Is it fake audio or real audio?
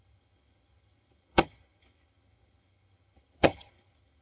fake